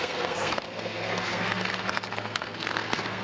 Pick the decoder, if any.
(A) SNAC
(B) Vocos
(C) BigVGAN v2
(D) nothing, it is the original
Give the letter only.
A